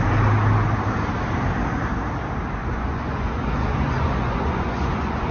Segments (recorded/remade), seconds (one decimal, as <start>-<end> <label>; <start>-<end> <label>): 0.0-2.6 recorded; 2.6-5.3 remade